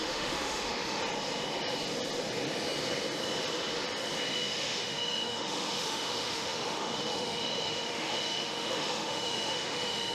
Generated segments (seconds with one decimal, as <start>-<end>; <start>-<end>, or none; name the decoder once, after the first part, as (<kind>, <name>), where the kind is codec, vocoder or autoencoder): 0.0-1.0 (autoencoder, DAC-VAE); 4.3-10.1